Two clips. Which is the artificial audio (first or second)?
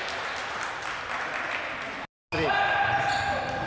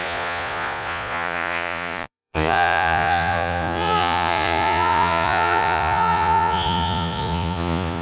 second